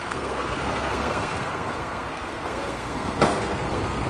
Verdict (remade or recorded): remade